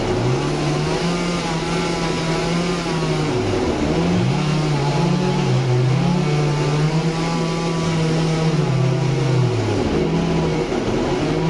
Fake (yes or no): no